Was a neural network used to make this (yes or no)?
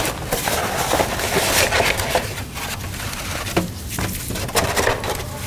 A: yes